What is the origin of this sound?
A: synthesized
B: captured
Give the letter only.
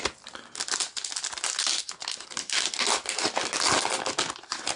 B